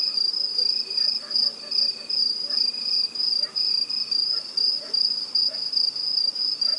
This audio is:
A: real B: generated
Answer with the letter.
A